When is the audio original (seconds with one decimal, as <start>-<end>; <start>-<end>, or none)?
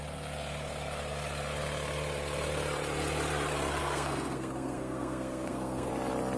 0.0-3.8; 5.9-6.4